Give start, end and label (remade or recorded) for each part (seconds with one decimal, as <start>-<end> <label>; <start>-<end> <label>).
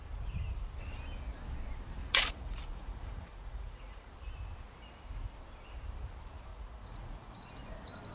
0.0-2.0 recorded; 2.0-4.1 remade; 4.1-6.5 recorded; 6.5-7.5 remade; 7.5-8.1 recorded